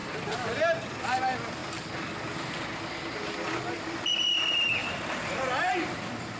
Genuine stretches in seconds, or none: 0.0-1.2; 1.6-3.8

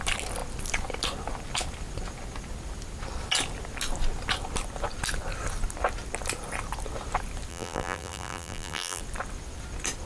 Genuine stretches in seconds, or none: 0.0-7.5; 9.0-10.1

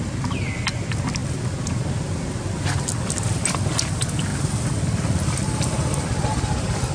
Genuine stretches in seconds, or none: 0.0-6.9

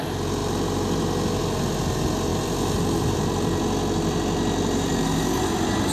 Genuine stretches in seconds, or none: 0.0-2.3; 4.9-5.9

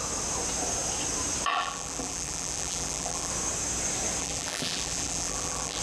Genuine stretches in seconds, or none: 0.0-1.5; 3.3-4.2

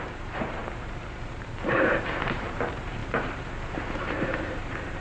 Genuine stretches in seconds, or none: none